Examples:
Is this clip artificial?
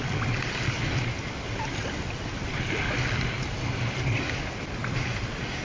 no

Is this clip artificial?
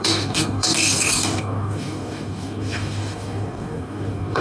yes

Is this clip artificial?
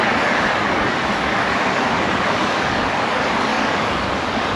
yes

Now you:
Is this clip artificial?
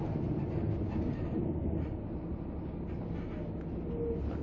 no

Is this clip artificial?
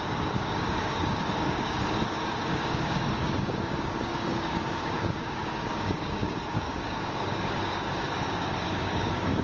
yes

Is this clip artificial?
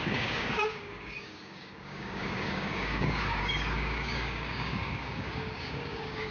yes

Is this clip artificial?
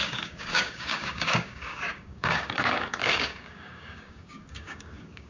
yes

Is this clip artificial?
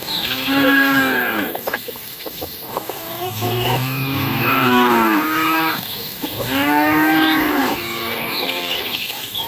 yes